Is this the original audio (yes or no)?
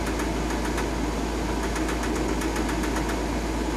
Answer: yes